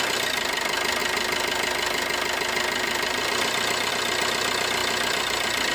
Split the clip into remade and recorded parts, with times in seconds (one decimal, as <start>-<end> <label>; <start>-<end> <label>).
0.0-1.0 recorded; 1.0-3.9 remade; 3.9-4.8 recorded; 4.8-5.7 remade